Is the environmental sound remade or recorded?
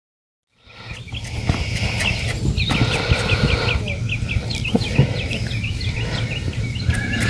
recorded